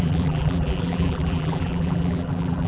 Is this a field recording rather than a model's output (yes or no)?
no